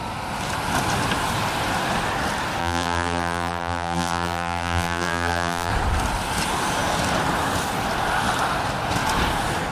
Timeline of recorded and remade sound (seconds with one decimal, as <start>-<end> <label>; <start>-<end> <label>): 0.0-2.6 recorded; 2.6-5.7 remade; 5.7-9.7 recorded

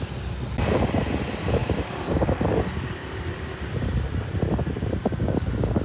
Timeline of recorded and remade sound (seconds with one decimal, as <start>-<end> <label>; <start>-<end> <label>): 0.0-1.6 recorded; 1.6-2.6 remade; 2.6-3.0 recorded; 3.0-5.0 remade; 5.0-5.8 recorded

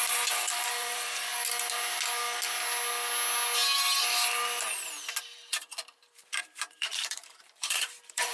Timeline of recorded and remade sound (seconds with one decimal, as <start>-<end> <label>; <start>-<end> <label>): 0.0-1.3 remade; 1.3-5.2 recorded; 5.2-8.3 remade

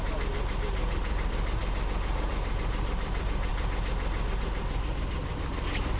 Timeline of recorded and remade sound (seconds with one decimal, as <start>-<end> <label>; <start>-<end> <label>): 0.0-1.6 remade; 1.6-2.3 recorded; 2.3-3.5 remade; 3.5-4.3 recorded; 4.3-6.0 remade